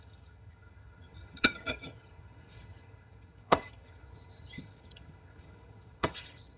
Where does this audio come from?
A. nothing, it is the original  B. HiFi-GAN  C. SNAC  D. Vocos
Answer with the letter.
B